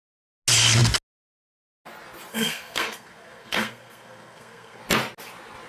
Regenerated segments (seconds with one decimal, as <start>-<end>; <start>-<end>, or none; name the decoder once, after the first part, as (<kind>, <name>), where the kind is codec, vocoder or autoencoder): 2.3-4.8 (codec, SNAC)